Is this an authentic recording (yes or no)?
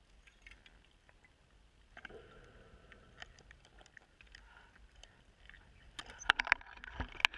yes